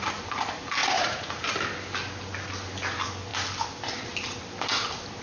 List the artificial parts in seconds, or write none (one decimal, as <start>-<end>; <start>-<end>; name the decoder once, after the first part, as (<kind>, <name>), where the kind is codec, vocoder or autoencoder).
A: 0.8-1.4 (vocoder, Vocos)